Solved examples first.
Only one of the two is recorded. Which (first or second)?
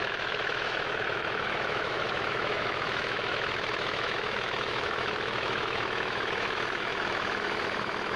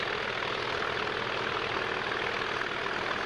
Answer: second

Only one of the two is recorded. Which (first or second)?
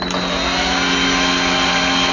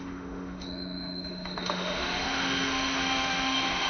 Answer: first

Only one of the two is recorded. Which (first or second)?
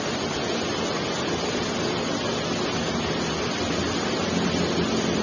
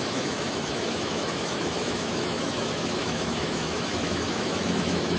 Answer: first